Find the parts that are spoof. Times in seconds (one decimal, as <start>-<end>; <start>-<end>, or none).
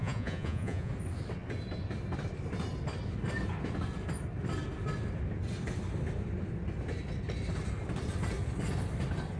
0.0-0.9